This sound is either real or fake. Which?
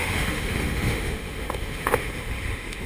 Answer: fake